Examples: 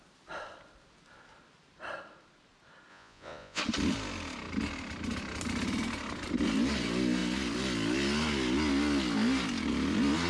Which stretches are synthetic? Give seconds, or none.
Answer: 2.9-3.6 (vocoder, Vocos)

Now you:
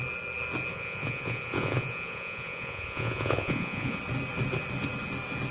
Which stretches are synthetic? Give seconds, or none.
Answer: 0.7-4.0 (vocoder, Vocos)

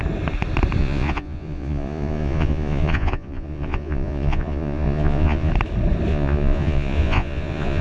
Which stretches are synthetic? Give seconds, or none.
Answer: 0.8-5.5 (vocoder, Vocos); 6.1-7.8

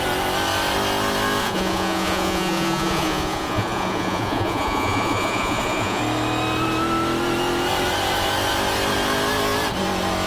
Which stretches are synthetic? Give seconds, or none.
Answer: 1.4-6.0 (vocoder, Vocos)

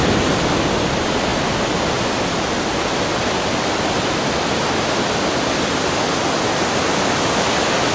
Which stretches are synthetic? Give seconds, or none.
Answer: none

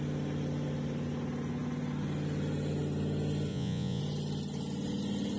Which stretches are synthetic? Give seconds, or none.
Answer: 3.5-4.0 (vocoder, Vocos)

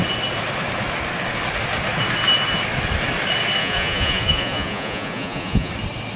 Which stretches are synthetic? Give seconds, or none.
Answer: 3.6-5.7 (vocoder, Vocos)